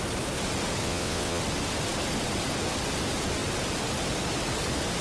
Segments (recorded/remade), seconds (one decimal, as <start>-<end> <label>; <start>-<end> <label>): 0.0-0.8 recorded; 0.8-1.4 remade; 1.4-5.0 recorded